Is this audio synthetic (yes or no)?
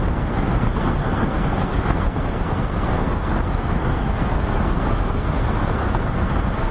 yes